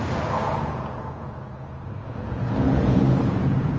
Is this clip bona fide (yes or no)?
no